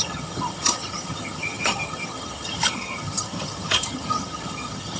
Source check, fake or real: fake